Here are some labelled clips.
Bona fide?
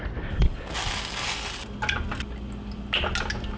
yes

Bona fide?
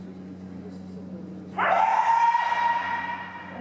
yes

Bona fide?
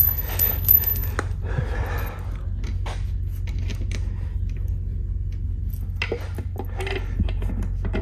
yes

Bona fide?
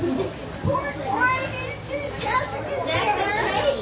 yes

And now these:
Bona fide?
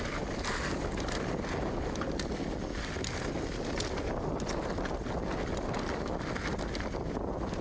yes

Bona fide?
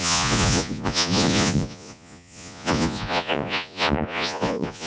no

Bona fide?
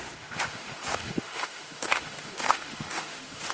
no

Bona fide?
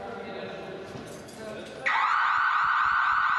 yes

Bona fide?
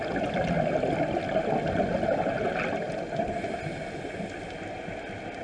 yes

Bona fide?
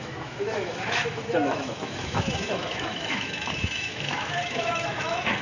no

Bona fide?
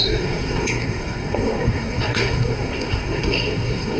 no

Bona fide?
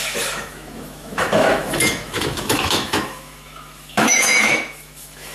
no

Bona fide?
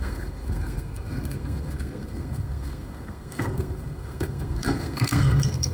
no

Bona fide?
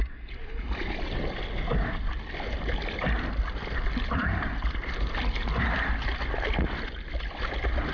yes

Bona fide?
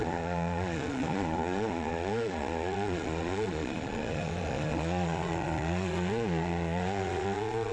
no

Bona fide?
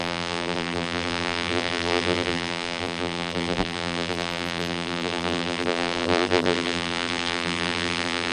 no